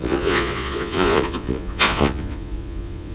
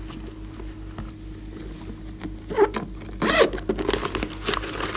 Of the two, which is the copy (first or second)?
first